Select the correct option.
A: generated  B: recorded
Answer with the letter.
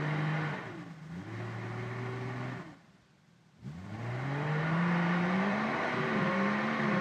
A